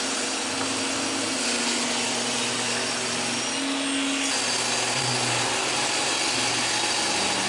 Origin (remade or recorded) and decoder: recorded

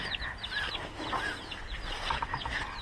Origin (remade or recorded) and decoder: recorded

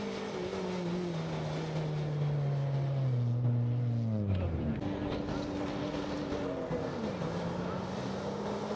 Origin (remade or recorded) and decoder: recorded